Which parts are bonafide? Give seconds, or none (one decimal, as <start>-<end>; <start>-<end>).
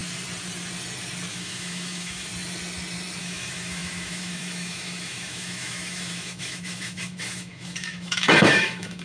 0.0-1.3; 2.3-3.2